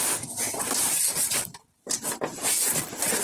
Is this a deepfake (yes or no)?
no